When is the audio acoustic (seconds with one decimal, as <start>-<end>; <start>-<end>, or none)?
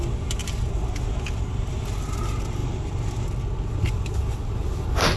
0.0-5.2